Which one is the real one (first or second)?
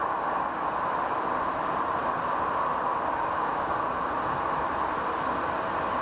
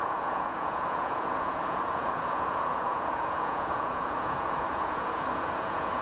first